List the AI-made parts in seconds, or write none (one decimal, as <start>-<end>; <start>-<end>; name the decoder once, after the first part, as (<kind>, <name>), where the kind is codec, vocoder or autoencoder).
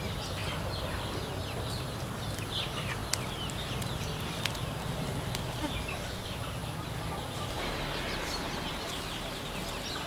none